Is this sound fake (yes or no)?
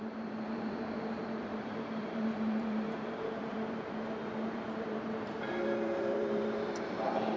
yes